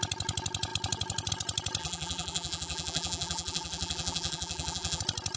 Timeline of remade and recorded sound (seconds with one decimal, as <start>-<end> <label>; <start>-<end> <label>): 0.0-1.8 recorded; 1.8-5.0 remade; 5.0-5.4 recorded